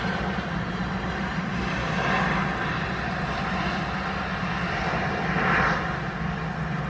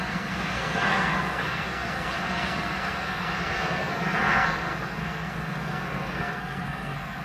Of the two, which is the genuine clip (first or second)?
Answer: first